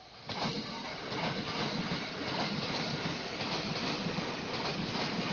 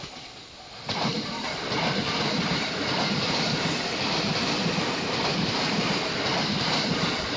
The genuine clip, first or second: first